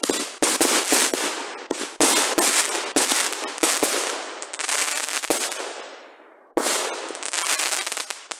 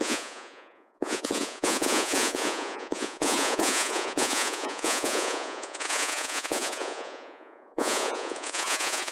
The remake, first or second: second